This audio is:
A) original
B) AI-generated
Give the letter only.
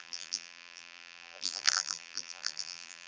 B